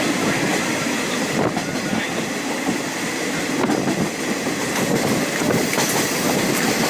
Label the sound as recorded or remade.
remade